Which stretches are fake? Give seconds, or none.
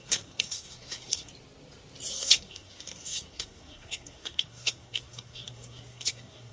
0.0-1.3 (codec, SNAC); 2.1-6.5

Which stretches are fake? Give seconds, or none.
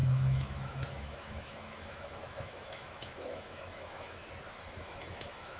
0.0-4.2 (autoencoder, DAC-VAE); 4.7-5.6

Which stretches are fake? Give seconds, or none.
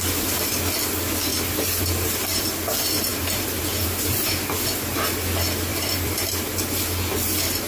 5.7-6.3 (vocoder, BigVGAN v2)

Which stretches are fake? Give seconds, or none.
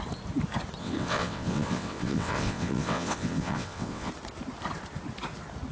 0.8-4.1 (vocoder, WaveNeXt)